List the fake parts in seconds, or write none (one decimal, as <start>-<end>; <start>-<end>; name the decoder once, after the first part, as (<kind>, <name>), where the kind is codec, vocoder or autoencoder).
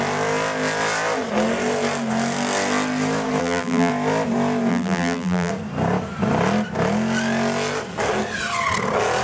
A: 3.4-3.9 (vocoder, BigVGAN v2); 4.7-5.5